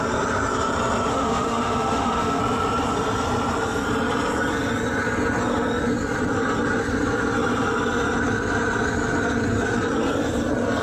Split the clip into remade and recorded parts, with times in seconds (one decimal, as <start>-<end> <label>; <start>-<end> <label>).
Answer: 0.0-1.1 recorded; 1.1-2.4 remade; 2.4-10.8 recorded